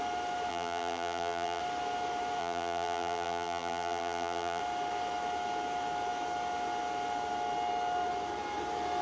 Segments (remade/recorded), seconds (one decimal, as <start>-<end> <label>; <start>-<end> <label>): 0.0-0.5 recorded; 0.5-1.6 remade; 1.6-2.4 recorded; 2.4-4.6 remade; 4.6-9.0 recorded